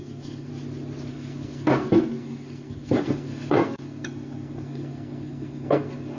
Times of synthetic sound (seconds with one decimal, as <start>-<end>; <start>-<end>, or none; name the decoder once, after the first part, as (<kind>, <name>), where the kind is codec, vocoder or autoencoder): 0.0-0.5 (codec, SNAC); 1.1-6.2